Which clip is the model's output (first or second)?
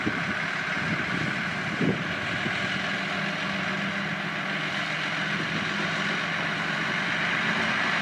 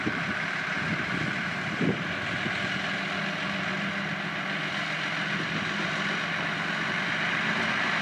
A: second